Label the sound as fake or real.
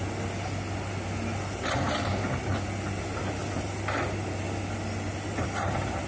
real